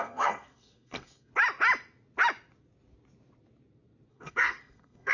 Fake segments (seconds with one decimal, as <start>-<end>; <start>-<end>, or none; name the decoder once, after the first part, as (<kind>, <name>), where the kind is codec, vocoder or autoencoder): 0.0-1.3 (codec, SNAC); 4.1-5.1